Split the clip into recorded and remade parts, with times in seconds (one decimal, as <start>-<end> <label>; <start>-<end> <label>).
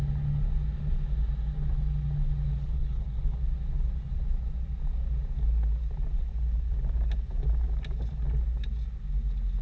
0.0-2.5 recorded; 2.5-3.4 remade; 3.4-9.6 recorded